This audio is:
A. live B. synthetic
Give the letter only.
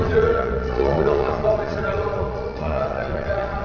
B